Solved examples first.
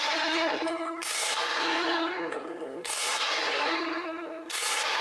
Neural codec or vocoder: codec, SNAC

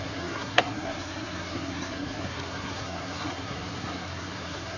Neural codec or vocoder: codec, SNAC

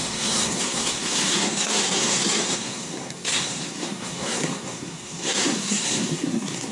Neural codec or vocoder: codec, SNAC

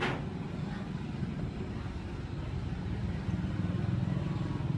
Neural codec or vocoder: none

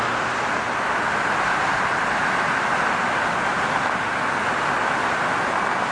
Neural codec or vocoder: none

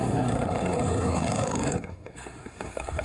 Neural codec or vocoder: codec, SNAC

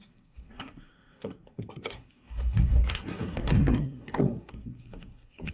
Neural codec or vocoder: codec, SNAC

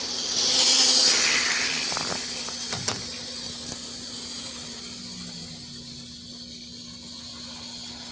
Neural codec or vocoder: none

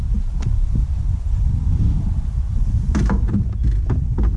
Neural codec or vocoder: none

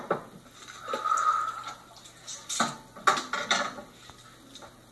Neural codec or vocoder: none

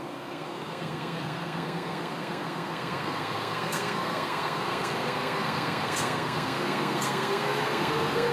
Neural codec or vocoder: codec, SNAC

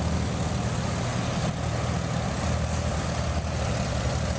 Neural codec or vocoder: none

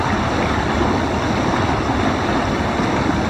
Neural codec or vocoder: none